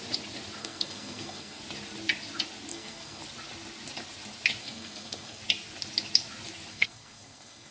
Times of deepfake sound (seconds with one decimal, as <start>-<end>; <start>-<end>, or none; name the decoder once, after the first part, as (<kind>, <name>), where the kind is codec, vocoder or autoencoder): 0.6-1.6 (codec, SNAC); 2.7-3.2; 4.6-5.4; 6.7-7.7